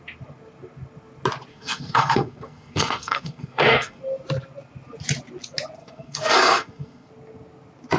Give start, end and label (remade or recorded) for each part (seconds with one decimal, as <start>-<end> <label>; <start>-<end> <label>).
0.0-1.5 recorded; 1.5-4.0 remade; 4.0-5.8 recorded; 5.8-7.1 remade; 7.1-8.0 recorded